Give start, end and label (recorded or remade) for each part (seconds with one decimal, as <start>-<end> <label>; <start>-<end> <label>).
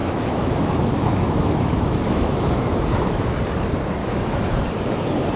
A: 0.0-3.2 remade; 3.2-4.0 recorded; 4.0-4.6 remade; 4.6-5.4 recorded